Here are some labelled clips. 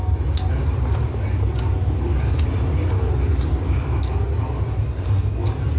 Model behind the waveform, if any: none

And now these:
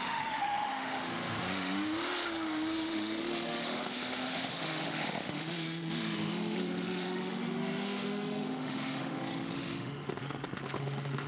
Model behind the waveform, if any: autoencoder, DAC-VAE